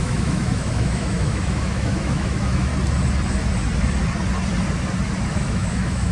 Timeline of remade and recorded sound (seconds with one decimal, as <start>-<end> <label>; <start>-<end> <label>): 0.0-2.7 remade; 2.7-5.3 recorded; 5.3-6.1 remade